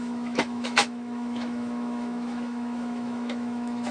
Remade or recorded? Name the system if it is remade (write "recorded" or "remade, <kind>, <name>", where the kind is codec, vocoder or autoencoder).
remade, autoencoder, DAC-VAE